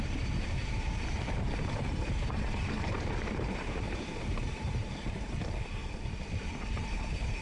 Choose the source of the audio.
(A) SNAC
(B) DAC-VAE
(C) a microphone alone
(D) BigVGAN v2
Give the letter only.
D